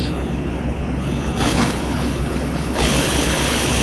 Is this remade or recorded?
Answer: remade